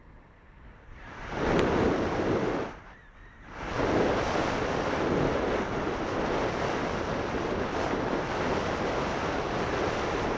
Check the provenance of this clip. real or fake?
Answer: real